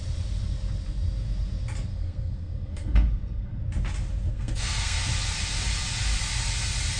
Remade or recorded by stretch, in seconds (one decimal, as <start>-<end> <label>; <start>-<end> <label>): 0.0-1.9 recorded; 1.9-3.6 remade; 3.6-4.3 recorded; 4.3-5.0 remade; 5.0-7.0 recorded